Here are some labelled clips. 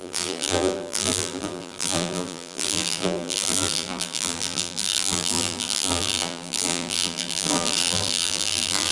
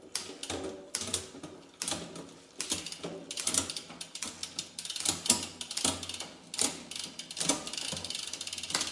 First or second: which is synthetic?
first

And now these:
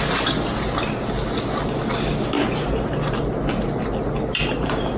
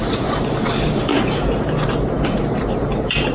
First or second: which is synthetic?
second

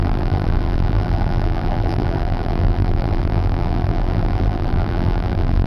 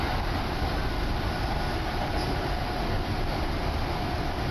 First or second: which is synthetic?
first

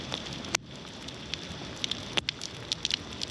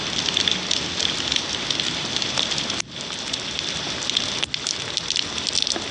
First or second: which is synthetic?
second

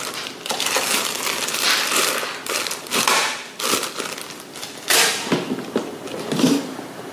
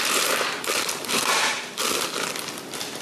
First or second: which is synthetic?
second